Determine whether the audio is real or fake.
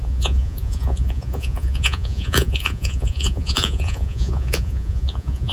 fake